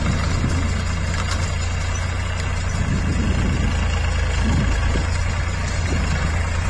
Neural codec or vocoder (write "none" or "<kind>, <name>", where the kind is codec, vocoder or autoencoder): none